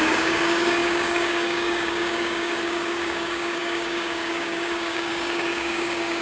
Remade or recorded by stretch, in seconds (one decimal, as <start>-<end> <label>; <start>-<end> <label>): 0.0-6.2 remade

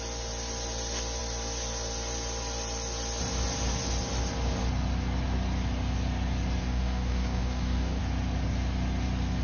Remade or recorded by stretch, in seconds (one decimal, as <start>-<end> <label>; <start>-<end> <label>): 0.0-6.6 recorded; 6.6-8.0 remade; 8.0-9.4 recorded